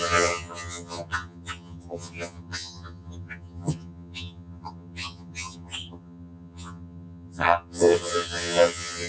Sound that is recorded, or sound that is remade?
remade